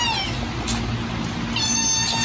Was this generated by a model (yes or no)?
no